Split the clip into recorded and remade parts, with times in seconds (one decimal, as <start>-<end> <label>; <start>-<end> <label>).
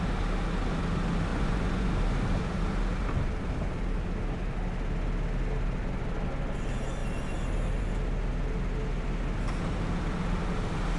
0.0-1.3 recorded; 1.3-1.9 remade; 1.9-11.0 recorded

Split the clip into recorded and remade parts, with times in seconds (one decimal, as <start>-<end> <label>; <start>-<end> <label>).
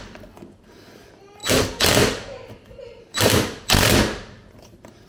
0.0-5.1 recorded